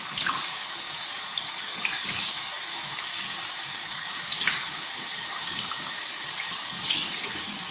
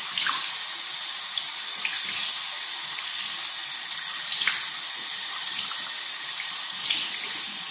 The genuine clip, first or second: second